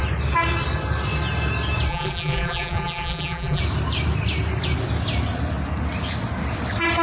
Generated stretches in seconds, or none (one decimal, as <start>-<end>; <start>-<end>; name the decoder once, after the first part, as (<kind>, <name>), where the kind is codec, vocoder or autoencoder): 1.9-3.6 (vocoder, BigVGAN v2)